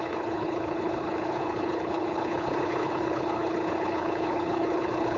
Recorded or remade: remade